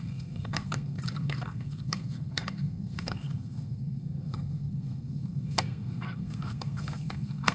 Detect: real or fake fake